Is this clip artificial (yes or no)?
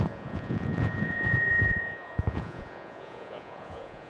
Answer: yes